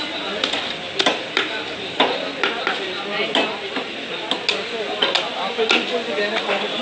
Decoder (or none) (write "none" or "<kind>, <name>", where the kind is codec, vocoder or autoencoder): none